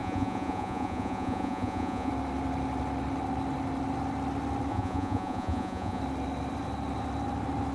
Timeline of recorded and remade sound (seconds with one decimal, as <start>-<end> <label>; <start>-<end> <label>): 0.0-2.1 remade; 2.1-4.7 recorded; 4.7-6.0 remade; 6.0-7.7 recorded